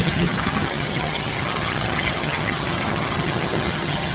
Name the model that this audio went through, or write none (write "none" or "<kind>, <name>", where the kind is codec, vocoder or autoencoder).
vocoder, HiFi-GAN